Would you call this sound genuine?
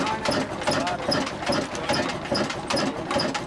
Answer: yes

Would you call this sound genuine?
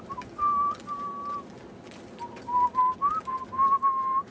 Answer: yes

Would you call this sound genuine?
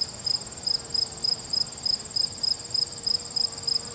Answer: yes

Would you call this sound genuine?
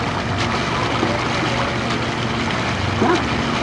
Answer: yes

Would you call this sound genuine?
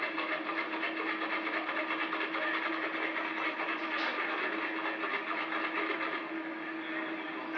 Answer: yes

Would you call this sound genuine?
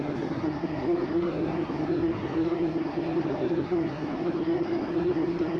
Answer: no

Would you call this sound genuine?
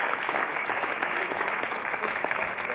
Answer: no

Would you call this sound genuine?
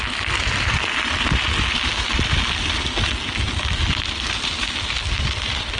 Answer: yes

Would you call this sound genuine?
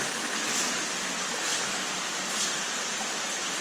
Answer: yes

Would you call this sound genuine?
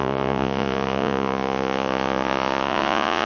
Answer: no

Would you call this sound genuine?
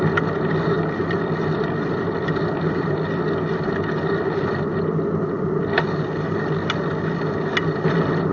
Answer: yes